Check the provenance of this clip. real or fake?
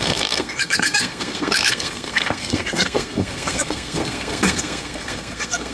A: fake